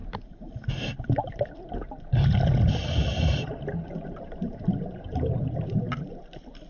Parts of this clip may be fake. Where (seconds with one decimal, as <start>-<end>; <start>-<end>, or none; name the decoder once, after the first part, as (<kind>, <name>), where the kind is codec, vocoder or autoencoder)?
2.8-6.7 (vocoder, BigVGAN v2)